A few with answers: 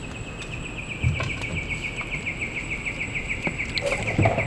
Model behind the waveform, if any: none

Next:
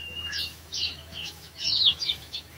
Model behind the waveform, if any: autoencoder, DAC-VAE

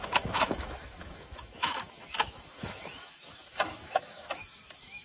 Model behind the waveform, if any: autoencoder, DAC-VAE